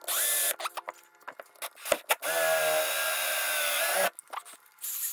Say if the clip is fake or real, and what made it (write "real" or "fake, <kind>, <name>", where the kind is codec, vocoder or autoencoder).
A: real